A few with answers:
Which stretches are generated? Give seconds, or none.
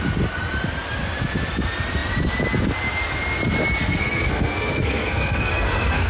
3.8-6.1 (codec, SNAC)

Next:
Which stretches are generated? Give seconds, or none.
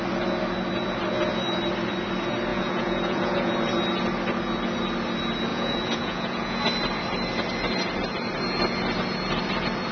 2.5-3.5 (vocoder, Vocos); 5.5-6.7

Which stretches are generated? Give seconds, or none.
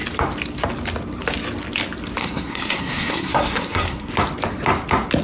2.2-4.1 (codec, SNAC)